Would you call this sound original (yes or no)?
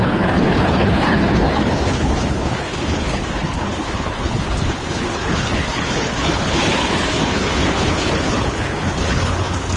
no